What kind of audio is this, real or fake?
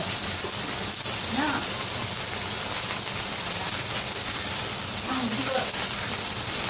real